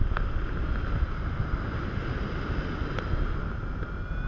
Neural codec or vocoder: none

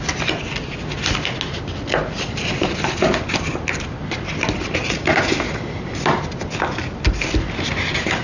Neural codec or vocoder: none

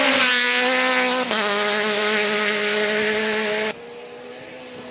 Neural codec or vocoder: none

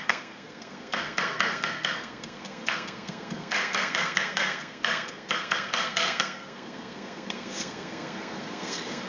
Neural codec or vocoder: codec, SNAC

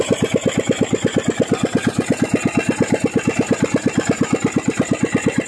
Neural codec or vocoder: none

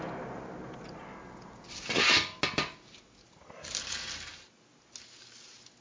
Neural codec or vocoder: none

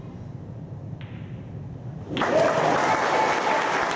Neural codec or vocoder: none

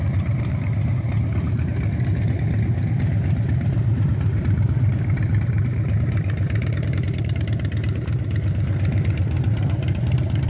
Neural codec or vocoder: vocoder, BigVGAN v2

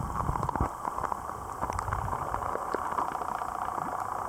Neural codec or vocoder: none